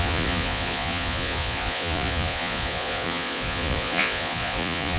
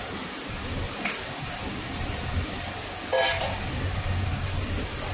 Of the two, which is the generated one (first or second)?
first